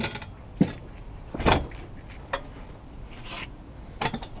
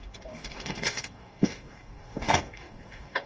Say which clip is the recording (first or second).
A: first